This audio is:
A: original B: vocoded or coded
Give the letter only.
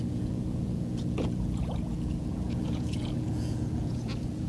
B